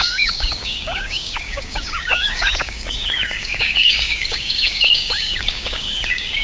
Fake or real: fake